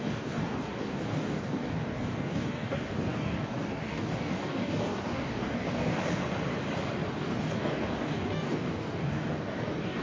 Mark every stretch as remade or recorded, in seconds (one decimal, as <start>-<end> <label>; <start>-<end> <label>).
0.0-6.2 remade; 6.2-7.1 recorded; 7.1-10.0 remade